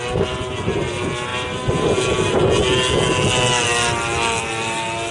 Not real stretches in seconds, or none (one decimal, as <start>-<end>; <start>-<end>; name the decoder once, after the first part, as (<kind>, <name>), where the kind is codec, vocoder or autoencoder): none